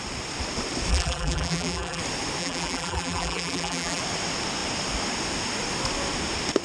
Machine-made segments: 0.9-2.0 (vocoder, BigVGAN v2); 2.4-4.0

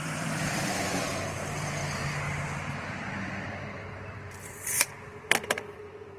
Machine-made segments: 0.0-1.8 (vocoder, BigVGAN v2); 3.6-6.2

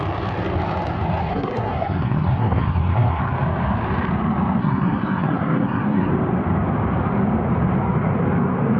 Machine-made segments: 1.2-3.2 (codec, SNAC); 4.6-6.1